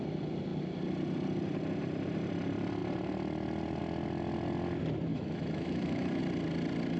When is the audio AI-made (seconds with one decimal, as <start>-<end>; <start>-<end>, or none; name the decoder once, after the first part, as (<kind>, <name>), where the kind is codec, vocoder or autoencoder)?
5.1-6.2 (autoencoder, DAC-VAE)